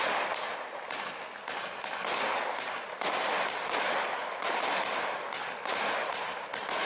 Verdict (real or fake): real